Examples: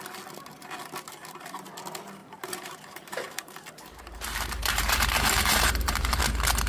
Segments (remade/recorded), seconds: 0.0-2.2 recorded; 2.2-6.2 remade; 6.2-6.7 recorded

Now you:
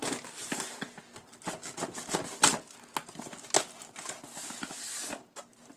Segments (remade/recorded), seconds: 0.0-5.8 recorded

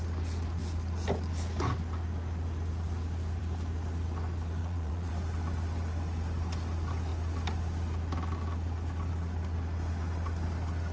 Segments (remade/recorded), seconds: 0.0-4.6 recorded; 4.6-5.1 remade; 5.1-10.9 recorded

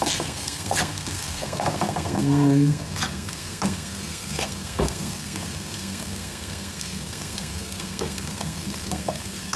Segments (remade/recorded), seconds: 0.0-9.6 remade

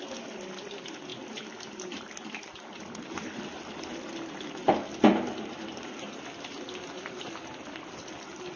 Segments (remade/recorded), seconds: 0.0-1.1 recorded; 1.1-2.9 remade; 2.9-4.6 recorded; 4.6-5.9 remade; 5.9-8.6 recorded

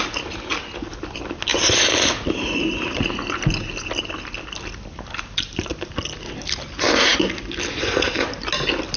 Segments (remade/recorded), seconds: 0.0-9.0 recorded